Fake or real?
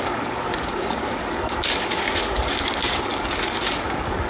fake